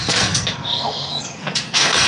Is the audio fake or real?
fake